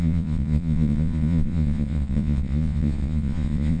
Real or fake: fake